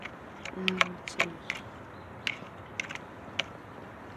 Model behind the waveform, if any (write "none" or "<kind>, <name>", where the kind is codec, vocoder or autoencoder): none